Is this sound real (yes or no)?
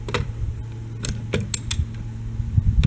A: yes